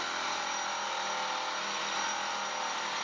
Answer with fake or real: real